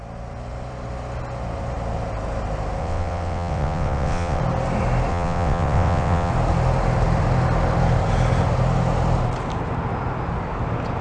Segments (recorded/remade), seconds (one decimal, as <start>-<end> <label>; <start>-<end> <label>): 0.0-2.8 recorded; 2.8-4.4 remade; 4.4-5.1 recorded; 5.1-6.3 remade; 6.3-11.0 recorded